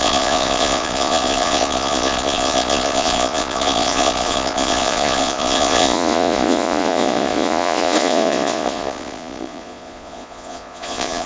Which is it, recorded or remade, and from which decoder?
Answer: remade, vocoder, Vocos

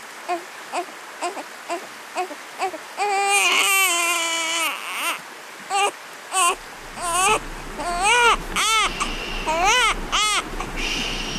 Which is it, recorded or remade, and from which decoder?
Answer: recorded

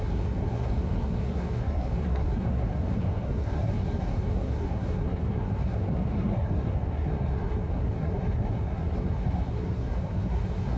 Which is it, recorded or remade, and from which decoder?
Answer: remade, codec, SNAC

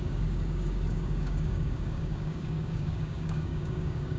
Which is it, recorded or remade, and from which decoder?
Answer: remade, codec, DAC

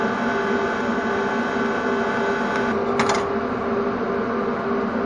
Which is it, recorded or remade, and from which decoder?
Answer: recorded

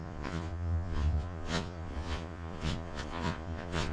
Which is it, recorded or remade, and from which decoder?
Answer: remade, vocoder, Vocos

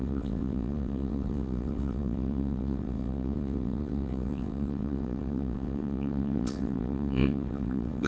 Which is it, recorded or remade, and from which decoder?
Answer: remade, vocoder, WaveNeXt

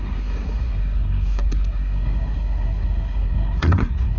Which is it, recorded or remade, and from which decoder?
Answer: remade, codec, SNAC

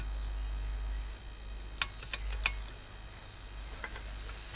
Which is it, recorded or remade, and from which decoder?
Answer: recorded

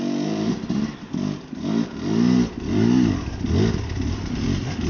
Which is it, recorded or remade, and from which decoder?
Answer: recorded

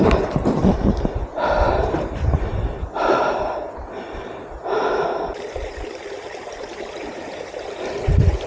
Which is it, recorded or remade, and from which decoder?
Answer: remade, vocoder, BigVGAN v2